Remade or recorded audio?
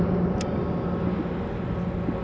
recorded